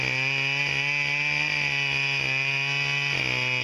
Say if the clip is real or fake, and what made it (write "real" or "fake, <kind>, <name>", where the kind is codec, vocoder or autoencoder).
real